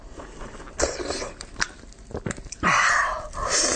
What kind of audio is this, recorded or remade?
remade